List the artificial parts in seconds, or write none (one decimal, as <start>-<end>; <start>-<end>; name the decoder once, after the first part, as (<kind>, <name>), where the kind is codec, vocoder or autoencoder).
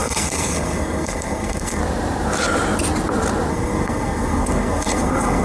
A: 0.0-1.8 (codec, SNAC); 3.5-5.4